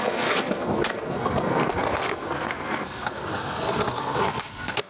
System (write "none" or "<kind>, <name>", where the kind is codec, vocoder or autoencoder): codec, SNAC